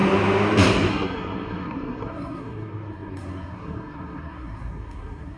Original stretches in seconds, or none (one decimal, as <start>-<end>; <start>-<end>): 0.0-0.9